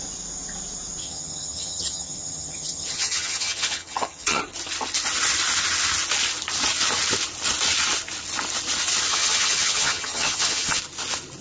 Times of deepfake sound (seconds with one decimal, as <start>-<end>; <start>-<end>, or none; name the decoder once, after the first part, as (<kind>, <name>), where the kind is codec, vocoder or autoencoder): 1.0-4.4 (vocoder, HiFi-GAN); 9.1-10.8

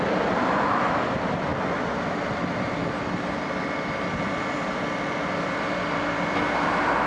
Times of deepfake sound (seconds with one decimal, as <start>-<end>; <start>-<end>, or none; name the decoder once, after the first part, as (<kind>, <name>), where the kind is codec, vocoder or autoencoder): none

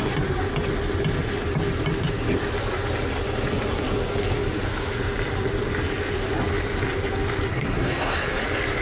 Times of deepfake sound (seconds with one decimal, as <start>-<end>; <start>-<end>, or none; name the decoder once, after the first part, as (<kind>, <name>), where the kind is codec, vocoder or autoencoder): 7.5-8.4 (codec, SNAC)

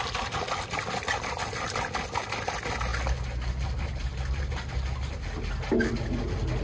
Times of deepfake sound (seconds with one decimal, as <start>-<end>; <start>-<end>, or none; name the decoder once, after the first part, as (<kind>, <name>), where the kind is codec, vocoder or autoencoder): none

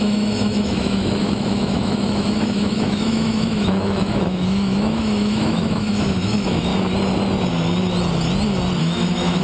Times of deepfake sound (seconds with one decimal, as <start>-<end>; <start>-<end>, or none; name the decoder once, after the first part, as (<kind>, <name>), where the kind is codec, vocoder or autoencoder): 0.0-6.7 (autoencoder, DAC-VAE); 8.8-9.4